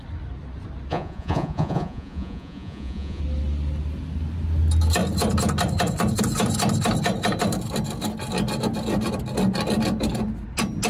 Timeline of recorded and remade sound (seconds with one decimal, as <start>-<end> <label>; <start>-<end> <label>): 0.0-0.9 recorded; 0.9-3.2 remade; 3.2-10.9 recorded